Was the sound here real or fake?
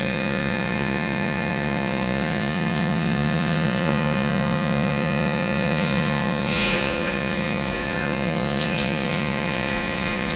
fake